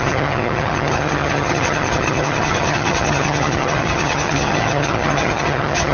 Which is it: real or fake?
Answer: fake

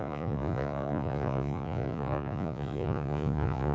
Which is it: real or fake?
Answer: fake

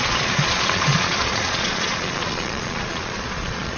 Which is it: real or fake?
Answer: fake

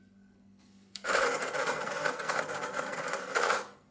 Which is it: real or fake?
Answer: fake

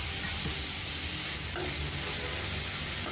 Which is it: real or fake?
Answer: real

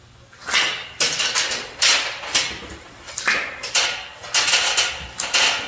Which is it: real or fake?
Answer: real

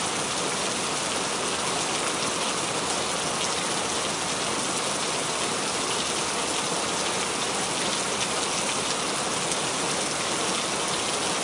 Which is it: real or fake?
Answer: real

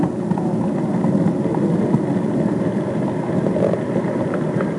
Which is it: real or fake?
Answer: real